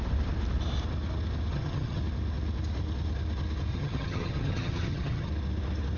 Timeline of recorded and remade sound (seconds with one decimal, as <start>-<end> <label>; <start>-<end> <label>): 0.0-1.5 recorded; 1.5-2.0 remade; 2.0-3.7 recorded; 3.7-5.3 remade; 5.3-6.0 recorded